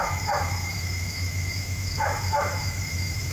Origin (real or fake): fake